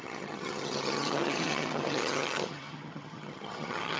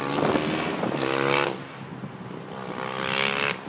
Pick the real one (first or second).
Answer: second